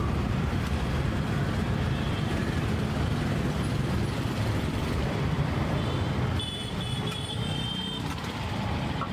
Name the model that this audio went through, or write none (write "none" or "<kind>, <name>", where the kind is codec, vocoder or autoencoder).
vocoder, BigVGAN v2